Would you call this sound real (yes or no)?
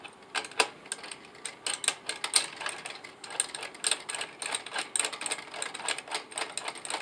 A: yes